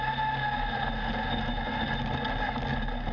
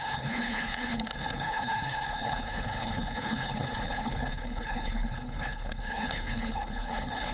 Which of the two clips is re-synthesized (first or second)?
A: second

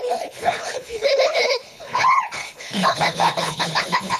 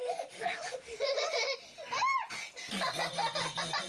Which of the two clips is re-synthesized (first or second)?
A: first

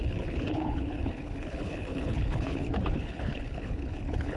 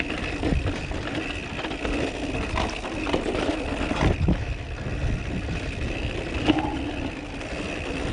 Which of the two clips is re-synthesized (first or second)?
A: first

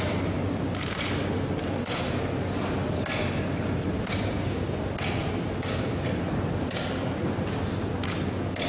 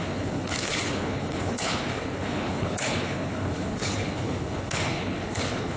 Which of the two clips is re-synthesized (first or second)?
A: second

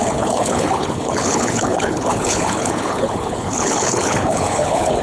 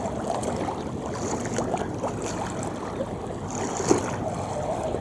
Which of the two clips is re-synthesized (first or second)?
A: first